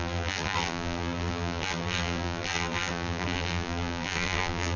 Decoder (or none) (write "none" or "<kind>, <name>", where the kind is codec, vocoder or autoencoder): vocoder, BigVGAN v2